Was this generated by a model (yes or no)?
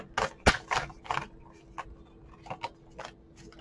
no